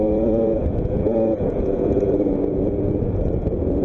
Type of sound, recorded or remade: remade